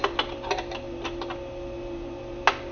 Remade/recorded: recorded